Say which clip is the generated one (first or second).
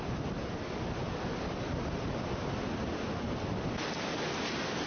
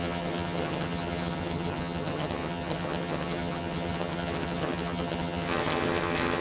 second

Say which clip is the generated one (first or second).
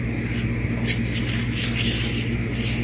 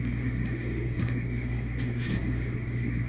second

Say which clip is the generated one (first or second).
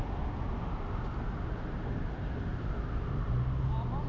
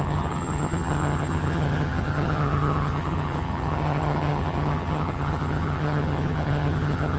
second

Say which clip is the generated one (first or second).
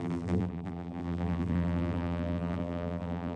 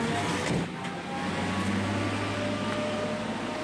first